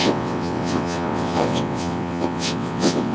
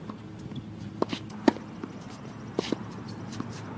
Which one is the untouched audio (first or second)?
second